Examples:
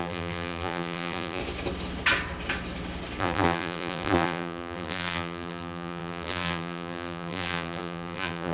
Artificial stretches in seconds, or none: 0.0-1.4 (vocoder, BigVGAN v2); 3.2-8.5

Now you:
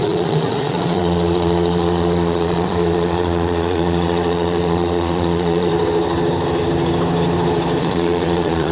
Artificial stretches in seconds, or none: 0.0-5.7 (vocoder, Vocos); 7.8-8.7

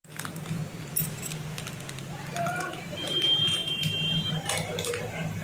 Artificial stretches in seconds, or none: 0.0-0.6 (vocoder, BigVGAN v2); 2.3-5.4

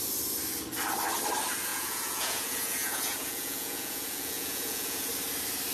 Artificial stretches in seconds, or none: 1.7-5.1 (vocoder, Vocos)

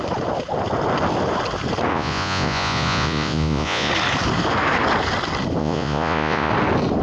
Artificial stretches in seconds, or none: 1.9-3.9 (vocoder, Vocos); 5.6-6.5